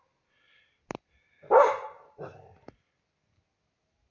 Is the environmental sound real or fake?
real